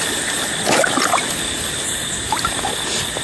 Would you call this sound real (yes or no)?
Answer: yes